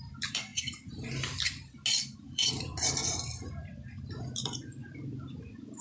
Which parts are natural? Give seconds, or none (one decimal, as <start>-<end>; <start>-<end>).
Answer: 0.5-1.9; 3.0-3.6; 4.8-5.8